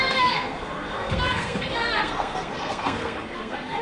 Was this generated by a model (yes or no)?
yes